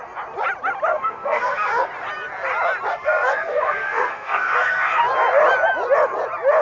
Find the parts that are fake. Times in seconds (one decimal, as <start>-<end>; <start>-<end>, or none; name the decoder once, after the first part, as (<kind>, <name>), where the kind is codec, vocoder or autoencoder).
0.9-1.9 (codec, SNAC); 2.9-5.0